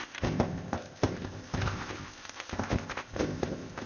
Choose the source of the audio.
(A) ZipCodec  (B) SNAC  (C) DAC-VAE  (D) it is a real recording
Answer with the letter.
A